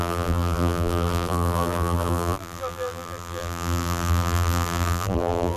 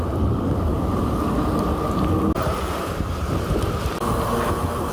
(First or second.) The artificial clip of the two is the first